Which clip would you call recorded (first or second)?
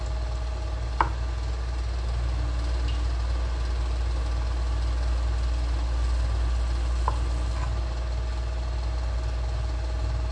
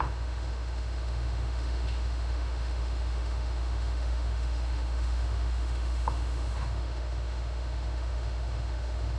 first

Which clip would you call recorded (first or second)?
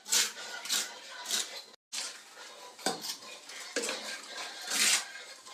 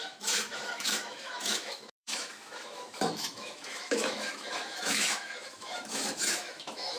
first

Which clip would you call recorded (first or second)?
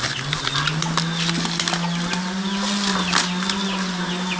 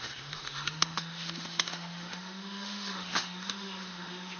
first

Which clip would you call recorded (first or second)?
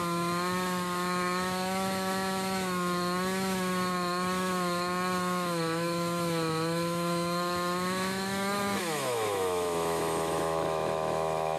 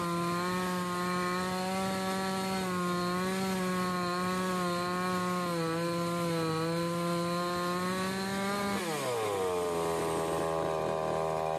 second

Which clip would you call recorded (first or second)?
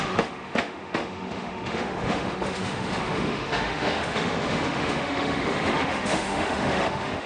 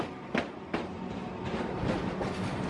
second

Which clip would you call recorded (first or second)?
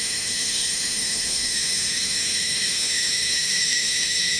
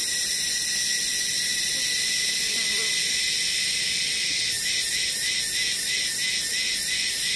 second